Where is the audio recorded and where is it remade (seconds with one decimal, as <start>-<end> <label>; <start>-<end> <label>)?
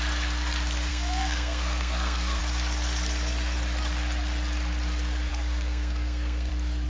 0.0-0.9 recorded; 0.9-2.4 remade; 2.4-5.3 recorded; 5.3-6.5 remade; 6.5-6.9 recorded